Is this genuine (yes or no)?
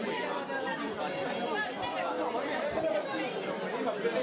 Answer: yes